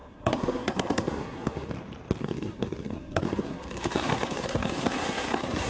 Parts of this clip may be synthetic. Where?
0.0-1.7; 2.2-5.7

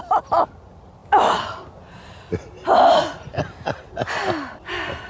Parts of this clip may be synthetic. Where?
none

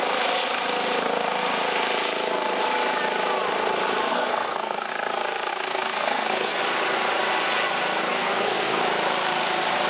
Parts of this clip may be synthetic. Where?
4.1-4.9; 5.5-6.6; 8.1-8.8